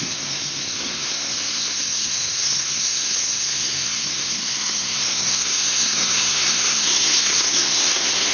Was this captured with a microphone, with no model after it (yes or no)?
no